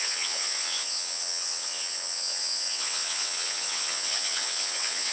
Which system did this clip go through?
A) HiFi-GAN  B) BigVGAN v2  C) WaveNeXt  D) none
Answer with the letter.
C